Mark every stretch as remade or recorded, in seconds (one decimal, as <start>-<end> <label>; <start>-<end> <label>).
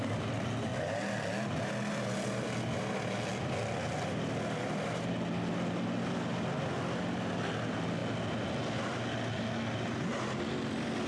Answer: 0.0-11.1 recorded